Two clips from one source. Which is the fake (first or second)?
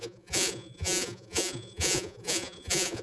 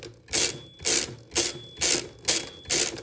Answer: first